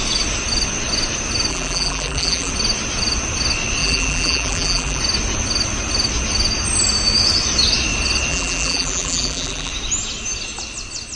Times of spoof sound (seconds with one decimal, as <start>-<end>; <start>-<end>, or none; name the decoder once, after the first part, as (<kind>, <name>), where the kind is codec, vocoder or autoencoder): 1.5-2.5 (vocoder, BigVGAN v2); 3.8-5.0; 8.3-9.7